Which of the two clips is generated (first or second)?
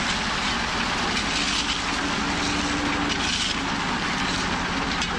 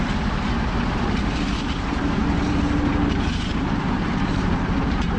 second